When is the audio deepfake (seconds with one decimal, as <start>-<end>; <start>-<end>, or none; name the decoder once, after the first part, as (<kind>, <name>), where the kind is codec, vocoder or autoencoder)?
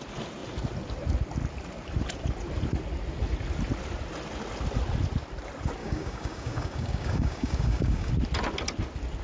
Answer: 5.8-8.1 (codec, DAC)